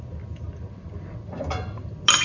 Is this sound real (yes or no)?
yes